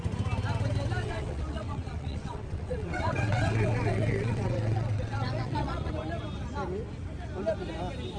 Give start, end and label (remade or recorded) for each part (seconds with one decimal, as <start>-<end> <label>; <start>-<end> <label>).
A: 0.0-1.0 recorded; 1.0-5.9 remade; 5.9-8.2 recorded